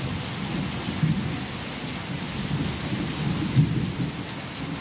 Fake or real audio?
real